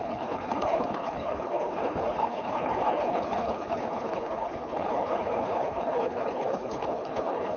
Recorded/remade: remade